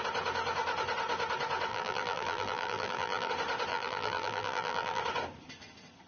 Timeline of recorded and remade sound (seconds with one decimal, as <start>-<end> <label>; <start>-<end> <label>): 0.0-1.7 recorded; 1.7-3.3 remade; 3.3-3.7 recorded; 3.7-5.0 remade; 5.0-6.1 recorded